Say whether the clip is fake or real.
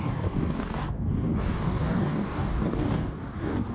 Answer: fake